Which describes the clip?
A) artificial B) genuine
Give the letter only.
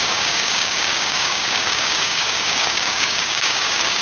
A